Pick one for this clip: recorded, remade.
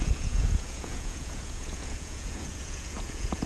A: remade